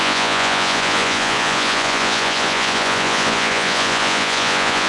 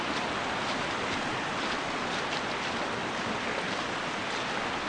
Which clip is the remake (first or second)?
first